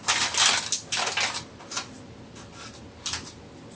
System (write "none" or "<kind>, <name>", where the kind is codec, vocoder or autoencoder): none